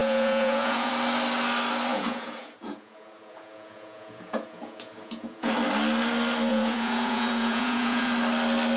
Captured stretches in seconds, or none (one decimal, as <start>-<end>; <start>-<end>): 0.9-1.9; 5.5-6.5; 8.1-8.8